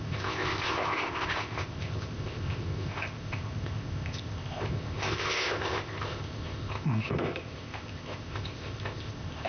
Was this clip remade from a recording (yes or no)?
yes